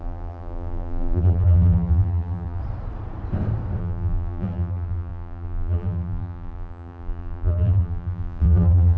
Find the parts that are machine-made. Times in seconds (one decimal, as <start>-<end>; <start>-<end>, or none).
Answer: 0.0-2.6; 3.8-9.0